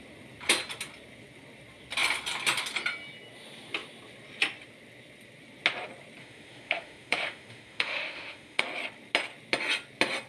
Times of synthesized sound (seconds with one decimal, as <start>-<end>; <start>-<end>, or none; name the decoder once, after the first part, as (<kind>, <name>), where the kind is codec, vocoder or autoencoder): 6.2-8.6 (autoencoder, DAC-VAE)